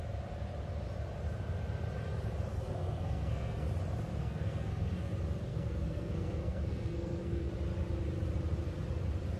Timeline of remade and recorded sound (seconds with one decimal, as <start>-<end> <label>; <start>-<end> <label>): 0.0-2.5 recorded; 2.5-3.7 remade; 3.7-4.2 recorded; 4.2-5.1 remade; 5.1-5.5 recorded; 5.5-7.5 remade; 7.5-9.4 recorded